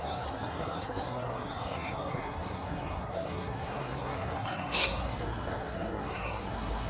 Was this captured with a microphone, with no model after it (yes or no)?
no